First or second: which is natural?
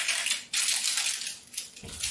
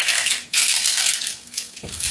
first